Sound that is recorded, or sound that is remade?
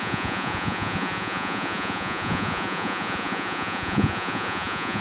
remade